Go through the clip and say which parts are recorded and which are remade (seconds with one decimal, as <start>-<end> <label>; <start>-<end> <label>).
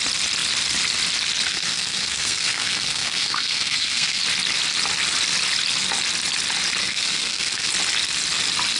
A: 0.0-1.5 recorded; 1.5-4.2 remade; 4.2-6.8 recorded; 6.8-7.7 remade; 7.7-8.8 recorded